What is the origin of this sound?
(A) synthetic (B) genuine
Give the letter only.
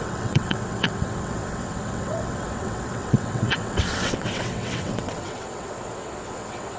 A